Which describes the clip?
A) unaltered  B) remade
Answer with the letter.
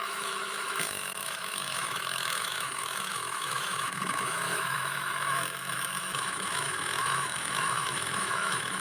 B